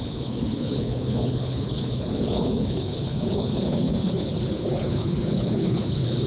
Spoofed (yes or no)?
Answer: yes